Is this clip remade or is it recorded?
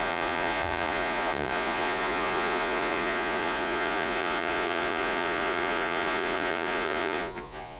remade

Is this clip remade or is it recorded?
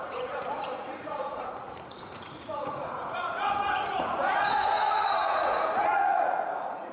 remade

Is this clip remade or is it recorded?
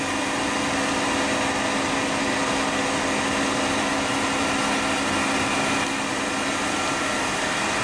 recorded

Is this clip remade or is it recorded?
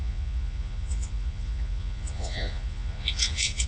remade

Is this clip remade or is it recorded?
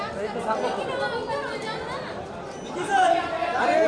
recorded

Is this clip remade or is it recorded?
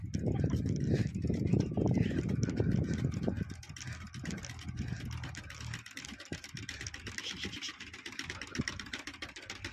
recorded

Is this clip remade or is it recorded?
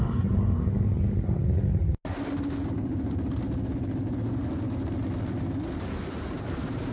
recorded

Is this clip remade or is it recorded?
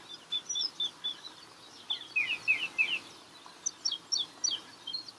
recorded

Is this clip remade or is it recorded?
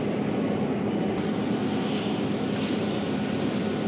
recorded